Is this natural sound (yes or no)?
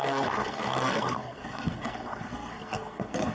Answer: no